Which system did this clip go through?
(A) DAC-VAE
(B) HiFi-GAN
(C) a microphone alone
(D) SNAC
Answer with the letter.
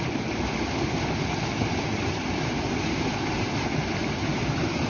C